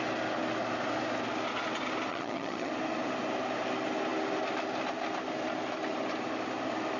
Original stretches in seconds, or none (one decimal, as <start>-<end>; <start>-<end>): 0.0-2.1; 2.7-7.0